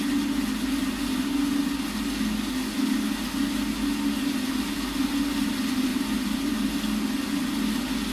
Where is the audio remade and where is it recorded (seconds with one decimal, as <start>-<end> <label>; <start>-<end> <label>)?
0.0-5.9 recorded; 5.9-6.7 remade; 6.7-8.1 recorded